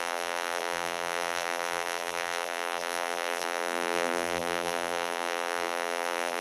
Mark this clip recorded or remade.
remade